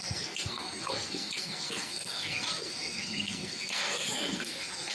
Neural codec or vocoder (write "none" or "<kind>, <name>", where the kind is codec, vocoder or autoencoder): codec, SNAC